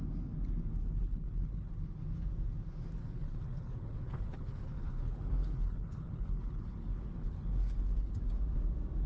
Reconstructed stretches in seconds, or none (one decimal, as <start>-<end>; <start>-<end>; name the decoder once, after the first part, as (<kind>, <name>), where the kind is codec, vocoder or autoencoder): 0.8-1.7 (codec, HILCodec); 3.0-8.1